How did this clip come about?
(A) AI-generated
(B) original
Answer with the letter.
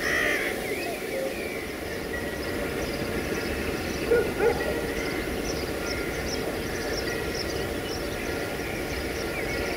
B